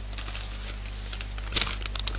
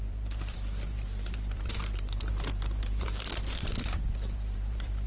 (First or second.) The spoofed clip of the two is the second